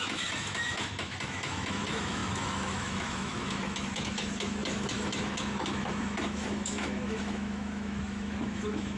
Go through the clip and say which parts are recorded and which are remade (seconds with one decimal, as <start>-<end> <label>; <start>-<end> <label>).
0.0-9.0 remade